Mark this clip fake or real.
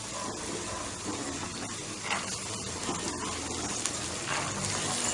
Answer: real